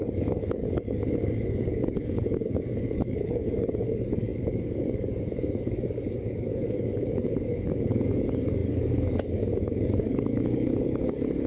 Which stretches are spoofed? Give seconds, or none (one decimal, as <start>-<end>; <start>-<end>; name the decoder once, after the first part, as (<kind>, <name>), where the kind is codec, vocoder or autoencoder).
0.0-11.5 (codec, DAC)